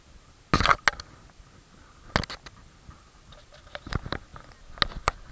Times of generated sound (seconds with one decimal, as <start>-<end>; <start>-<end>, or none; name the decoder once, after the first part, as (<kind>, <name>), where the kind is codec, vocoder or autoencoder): none